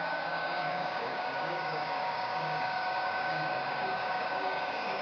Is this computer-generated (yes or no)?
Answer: yes